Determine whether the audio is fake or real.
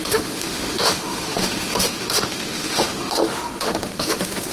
fake